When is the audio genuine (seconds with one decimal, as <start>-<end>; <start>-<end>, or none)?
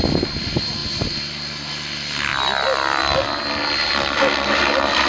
0.0-5.1